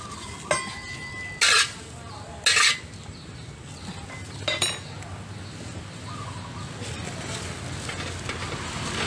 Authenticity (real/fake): real